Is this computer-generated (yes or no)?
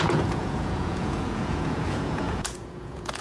yes